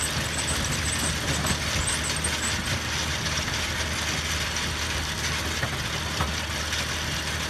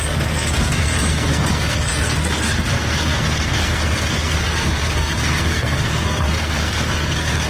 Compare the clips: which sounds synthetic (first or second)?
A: second